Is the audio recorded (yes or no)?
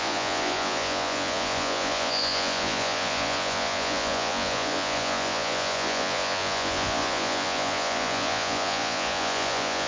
no